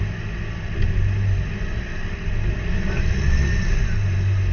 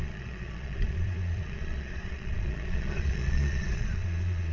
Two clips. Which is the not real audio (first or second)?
second